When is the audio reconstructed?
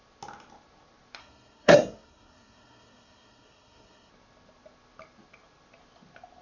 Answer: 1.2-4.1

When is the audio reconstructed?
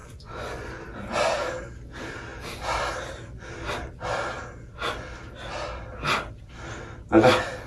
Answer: 0.0-0.7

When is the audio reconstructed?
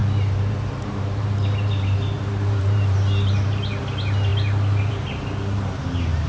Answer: 0.0-3.8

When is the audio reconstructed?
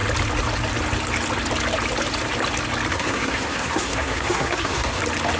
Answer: 2.9-5.0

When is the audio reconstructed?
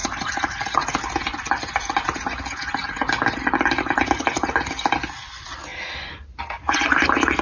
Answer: none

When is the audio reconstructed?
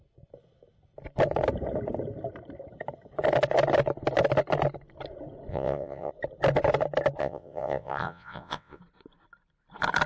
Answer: 5.5-6.1; 7.2-8.8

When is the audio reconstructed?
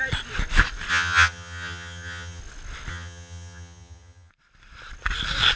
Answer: 0.9-2.4; 2.9-4.3